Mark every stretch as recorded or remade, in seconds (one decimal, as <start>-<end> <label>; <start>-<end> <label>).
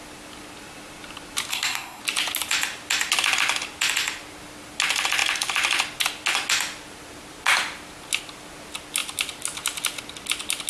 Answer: 0.0-1.5 recorded; 1.5-2.0 remade; 2.0-10.7 recorded